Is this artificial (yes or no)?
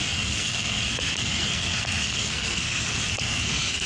yes